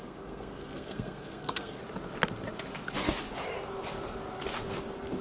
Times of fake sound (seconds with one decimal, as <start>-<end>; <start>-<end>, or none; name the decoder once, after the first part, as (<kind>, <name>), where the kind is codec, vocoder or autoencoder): 0.0-1.8 (codec, SNAC)